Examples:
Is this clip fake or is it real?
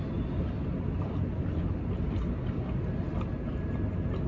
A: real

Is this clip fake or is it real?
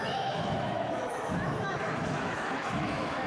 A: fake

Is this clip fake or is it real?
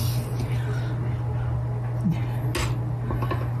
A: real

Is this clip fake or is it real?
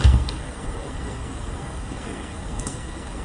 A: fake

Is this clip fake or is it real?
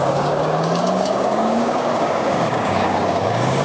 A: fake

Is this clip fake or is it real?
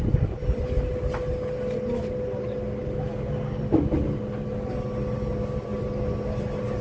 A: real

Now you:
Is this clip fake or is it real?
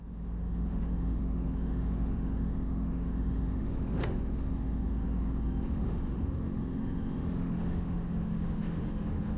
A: fake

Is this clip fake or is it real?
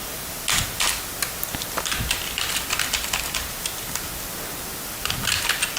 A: real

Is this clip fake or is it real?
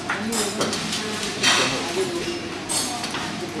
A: real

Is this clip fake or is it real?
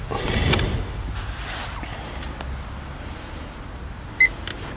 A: real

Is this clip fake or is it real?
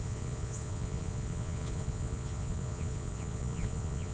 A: fake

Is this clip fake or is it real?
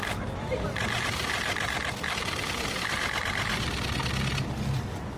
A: real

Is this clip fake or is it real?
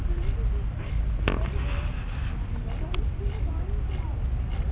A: real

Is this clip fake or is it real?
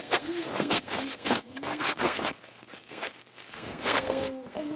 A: fake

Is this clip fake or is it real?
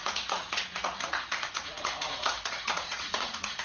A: fake